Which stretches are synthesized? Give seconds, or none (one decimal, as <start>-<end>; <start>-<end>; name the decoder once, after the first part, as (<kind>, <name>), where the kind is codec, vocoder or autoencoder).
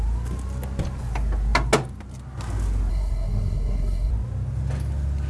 2.9-4.1 (codec, SNAC)